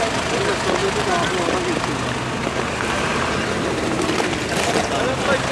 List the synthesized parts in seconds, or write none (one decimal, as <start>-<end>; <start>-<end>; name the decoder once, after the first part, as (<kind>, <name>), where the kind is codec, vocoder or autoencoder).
none

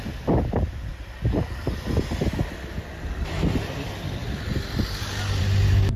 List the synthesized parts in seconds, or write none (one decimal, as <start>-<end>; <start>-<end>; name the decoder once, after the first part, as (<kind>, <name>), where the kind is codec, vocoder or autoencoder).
none

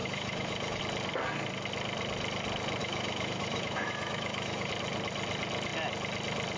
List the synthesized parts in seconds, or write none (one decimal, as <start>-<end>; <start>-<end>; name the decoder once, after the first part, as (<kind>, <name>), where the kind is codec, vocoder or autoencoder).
0.0-0.8 (autoencoder, DAC-VAE); 2.8-4.7

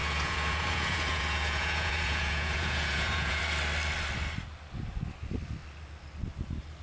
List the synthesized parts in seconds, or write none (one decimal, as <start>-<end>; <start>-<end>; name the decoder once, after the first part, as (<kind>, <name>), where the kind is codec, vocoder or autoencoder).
0.0-3.4 (vocoder, Vocos)

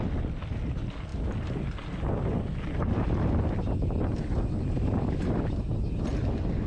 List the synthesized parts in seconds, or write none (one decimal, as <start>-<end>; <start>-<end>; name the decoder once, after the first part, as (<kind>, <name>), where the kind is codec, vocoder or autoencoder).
none